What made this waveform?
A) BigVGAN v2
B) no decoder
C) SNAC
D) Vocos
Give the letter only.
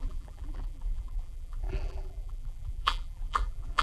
A